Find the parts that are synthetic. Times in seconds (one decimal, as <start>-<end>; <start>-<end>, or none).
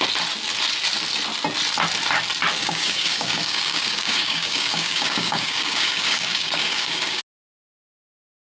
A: 2.6-7.2